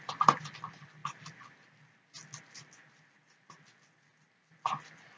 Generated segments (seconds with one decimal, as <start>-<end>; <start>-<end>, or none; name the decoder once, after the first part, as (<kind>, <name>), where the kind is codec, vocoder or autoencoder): none